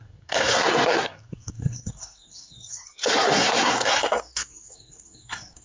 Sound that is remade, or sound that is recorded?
remade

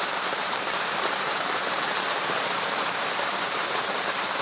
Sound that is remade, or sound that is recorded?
remade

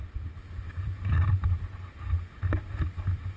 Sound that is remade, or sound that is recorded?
recorded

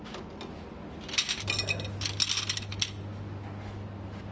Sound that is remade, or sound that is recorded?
recorded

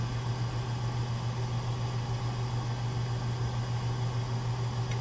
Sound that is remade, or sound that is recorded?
recorded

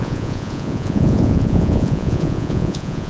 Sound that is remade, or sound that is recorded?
remade